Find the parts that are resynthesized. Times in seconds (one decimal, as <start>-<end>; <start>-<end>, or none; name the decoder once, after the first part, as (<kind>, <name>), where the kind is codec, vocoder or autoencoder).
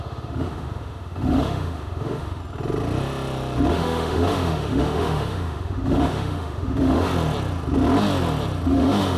0.0-2.4 (autoencoder, DAC-VAE); 3.7-7.1; 8.7-9.2